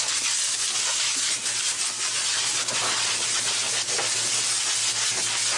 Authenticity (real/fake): real